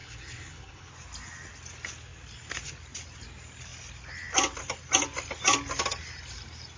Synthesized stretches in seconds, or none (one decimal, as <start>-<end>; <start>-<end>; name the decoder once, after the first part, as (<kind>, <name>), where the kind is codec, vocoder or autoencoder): 0.0-0.9 (codec, HILCodec)